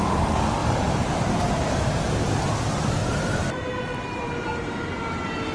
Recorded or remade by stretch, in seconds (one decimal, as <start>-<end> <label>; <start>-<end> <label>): 0.0-0.6 recorded; 0.6-2.1 remade; 2.1-3.0 recorded; 3.0-5.1 remade; 5.1-5.5 recorded